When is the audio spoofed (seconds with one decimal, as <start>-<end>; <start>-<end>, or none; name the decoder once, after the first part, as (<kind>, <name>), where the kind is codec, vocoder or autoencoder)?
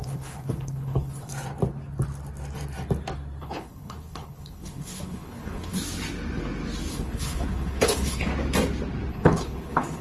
0.0-1.3 (codec, HILCodec); 3.4-5.8; 6.9-8.3; 9.1-10.0